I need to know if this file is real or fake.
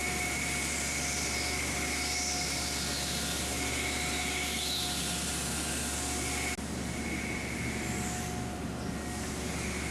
real